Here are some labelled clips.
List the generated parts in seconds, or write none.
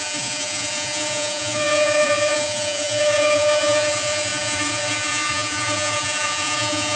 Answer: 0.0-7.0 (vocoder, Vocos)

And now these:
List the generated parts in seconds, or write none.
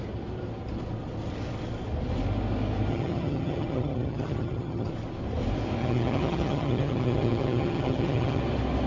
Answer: 2.9-4.9 (vocoder, HiFi-GAN); 5.8-8.4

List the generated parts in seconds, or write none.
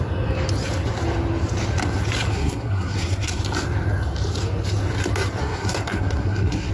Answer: 2.3-3.4 (codec, SNAC); 5.4-6.7